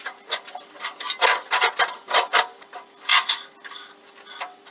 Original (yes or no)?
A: yes